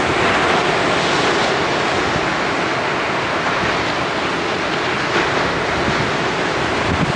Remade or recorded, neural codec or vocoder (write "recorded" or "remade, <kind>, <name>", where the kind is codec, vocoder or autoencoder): recorded